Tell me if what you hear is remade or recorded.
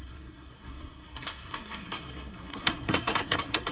remade